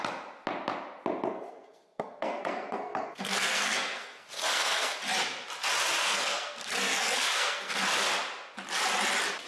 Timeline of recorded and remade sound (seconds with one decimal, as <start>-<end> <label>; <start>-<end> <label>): 0.0-1.3 recorded; 1.3-5.0 remade; 5.0-6.0 recorded; 6.0-7.8 remade; 7.8-9.5 recorded

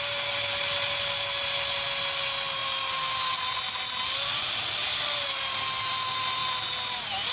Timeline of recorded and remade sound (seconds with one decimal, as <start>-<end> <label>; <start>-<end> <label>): 0.0-7.3 recorded

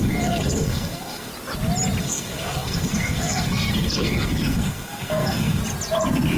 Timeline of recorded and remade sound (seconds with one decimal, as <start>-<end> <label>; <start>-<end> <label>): 0.0-1.3 remade; 1.3-2.0 recorded; 2.0-5.6 remade; 5.6-6.4 recorded

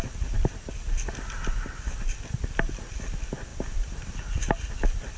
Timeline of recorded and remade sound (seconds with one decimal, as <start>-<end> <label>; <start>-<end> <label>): 0.0-5.2 recorded